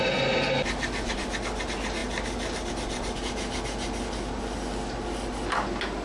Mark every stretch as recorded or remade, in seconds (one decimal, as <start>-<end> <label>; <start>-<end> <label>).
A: 0.0-6.0 recorded